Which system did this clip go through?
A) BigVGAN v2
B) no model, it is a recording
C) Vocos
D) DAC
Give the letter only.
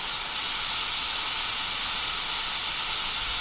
B